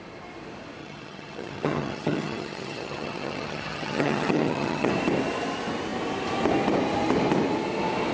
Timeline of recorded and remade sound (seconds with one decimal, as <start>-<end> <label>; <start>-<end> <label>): 0.0-0.8 recorded; 0.8-4.9 remade; 4.9-8.1 recorded